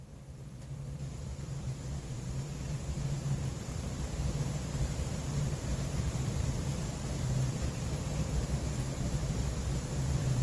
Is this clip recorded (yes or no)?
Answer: no